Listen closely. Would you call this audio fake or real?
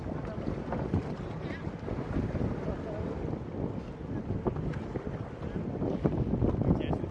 real